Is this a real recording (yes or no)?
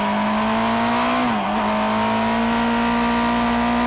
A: yes